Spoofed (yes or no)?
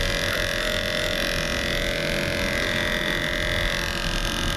no